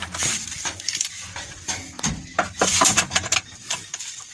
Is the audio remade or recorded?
remade